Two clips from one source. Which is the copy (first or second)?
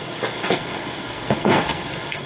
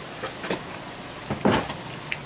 first